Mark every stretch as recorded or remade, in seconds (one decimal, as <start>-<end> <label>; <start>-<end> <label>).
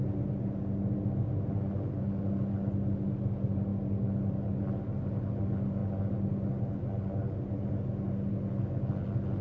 0.0-9.4 recorded